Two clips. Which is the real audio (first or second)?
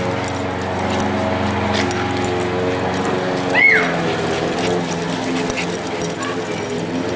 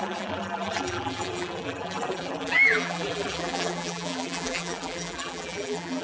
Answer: first